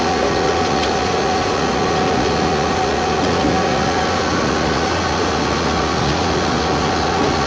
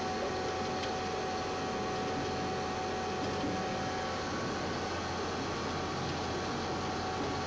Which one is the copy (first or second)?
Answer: first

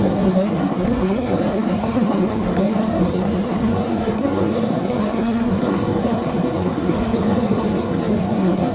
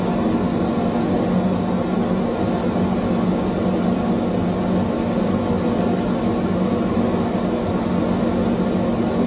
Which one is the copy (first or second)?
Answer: first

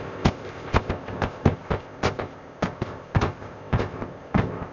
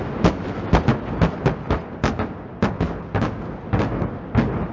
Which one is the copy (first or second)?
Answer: first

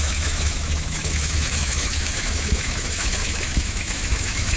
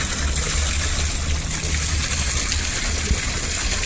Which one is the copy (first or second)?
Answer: first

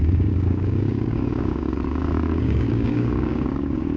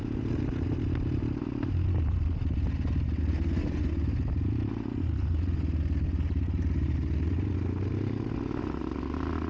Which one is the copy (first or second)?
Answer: first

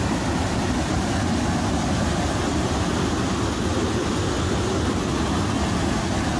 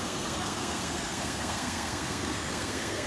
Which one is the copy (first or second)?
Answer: second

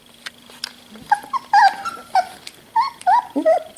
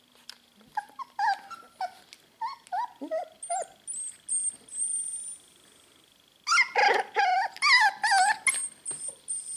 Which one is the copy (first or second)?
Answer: first